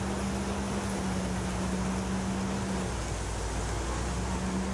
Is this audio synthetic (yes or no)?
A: no